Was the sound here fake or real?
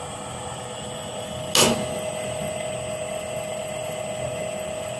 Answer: real